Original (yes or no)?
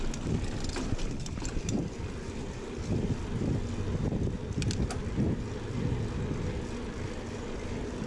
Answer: yes